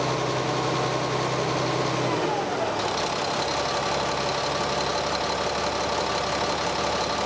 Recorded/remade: recorded